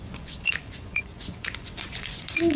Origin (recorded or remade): remade